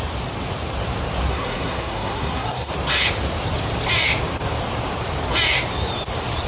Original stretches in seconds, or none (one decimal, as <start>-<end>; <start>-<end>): 0.0-1.3; 2.7-6.5